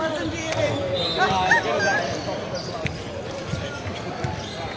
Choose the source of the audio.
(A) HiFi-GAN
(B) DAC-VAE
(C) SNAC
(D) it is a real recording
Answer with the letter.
D